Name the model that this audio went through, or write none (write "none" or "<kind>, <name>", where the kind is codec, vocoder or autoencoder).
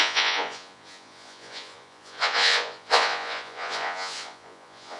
vocoder, Vocos